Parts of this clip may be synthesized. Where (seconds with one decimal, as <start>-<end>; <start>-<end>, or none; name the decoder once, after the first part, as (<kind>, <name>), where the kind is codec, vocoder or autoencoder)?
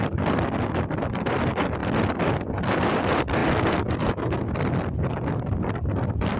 none